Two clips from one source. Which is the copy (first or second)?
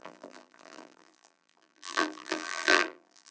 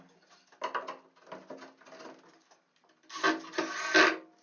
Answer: first